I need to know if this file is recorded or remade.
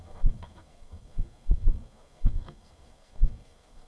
remade